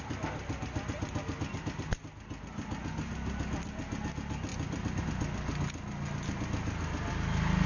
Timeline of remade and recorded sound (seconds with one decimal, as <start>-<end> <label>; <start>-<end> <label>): 0.0-7.7 recorded